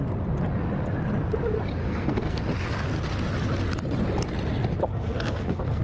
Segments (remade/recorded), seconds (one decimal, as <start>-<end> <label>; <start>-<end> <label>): 0.0-1.8 recorded; 1.8-2.4 remade; 2.4-4.9 recorded; 4.9-5.8 remade